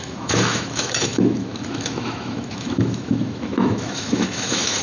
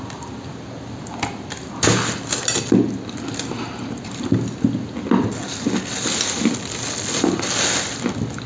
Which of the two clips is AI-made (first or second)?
first